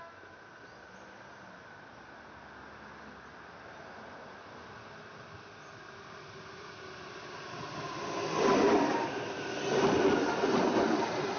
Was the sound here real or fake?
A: real